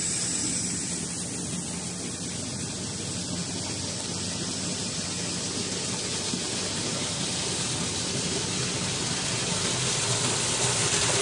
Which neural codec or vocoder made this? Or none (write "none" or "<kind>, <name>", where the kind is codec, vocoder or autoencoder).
none